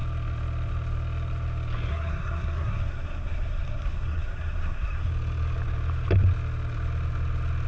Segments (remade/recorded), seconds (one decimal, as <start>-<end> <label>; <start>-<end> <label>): 0.0-1.9 recorded; 1.9-5.1 remade; 5.1-7.7 recorded